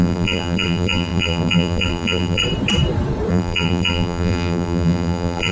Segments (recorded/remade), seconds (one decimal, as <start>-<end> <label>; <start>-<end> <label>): 0.0-2.4 remade; 2.4-3.3 recorded; 3.3-5.5 remade